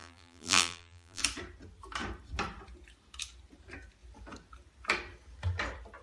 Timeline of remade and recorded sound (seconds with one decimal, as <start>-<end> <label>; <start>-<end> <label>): 0.0-1.2 remade; 1.2-6.0 recorded